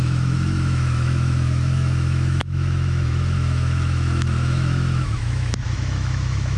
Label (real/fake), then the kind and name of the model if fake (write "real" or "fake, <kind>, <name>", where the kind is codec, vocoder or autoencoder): fake, autoencoder, DAC-VAE